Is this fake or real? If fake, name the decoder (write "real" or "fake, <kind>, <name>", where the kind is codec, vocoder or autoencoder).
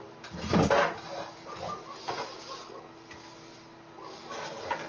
real